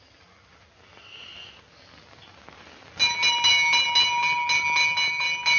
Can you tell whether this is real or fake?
real